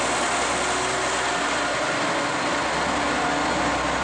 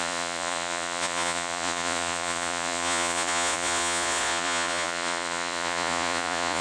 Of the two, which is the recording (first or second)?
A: first